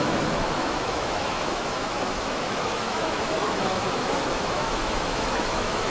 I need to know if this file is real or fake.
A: fake